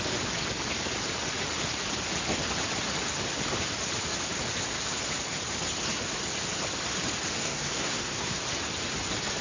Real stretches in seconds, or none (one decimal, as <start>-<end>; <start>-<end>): 0.0-7.4; 8.4-9.4